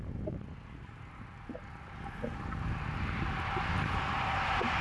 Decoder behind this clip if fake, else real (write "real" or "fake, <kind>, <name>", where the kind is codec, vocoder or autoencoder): real